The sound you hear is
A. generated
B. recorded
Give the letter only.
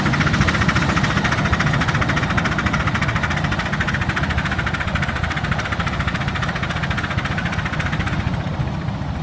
B